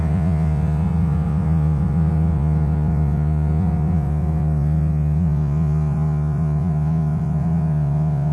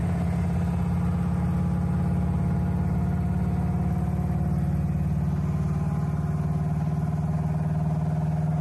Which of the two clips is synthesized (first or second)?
first